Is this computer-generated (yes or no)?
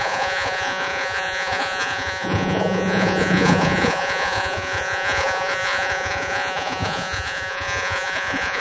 yes